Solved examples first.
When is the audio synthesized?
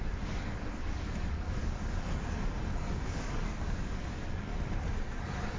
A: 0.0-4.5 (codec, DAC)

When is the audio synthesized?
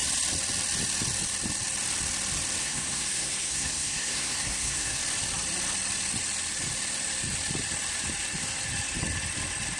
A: 2.6-5.0 (codec, SNAC)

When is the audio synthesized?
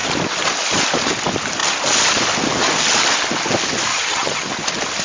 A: 3.9-4.5 (vocoder, HiFi-GAN)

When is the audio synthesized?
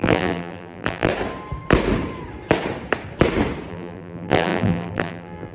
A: 0.0-1.1 (vocoder, BigVGAN v2); 3.7-5.5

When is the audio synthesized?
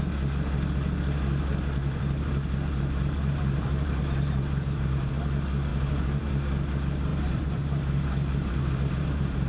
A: 1.8-5.1 (vocoder, BigVGAN v2); 5.7-6.3; 7.1-9.5